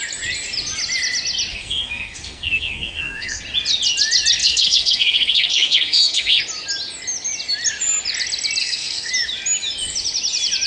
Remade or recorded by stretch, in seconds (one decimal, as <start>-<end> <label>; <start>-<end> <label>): 0.0-1.5 recorded; 1.5-3.4 remade; 3.4-4.4 recorded; 4.4-6.4 remade; 6.4-8.6 recorded; 8.6-9.1 remade; 9.1-10.7 recorded